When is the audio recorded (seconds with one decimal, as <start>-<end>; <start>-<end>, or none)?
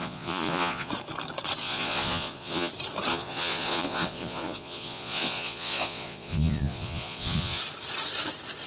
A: 0.9-1.6; 2.7-3.1; 7.6-8.7